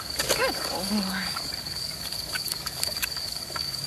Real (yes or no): no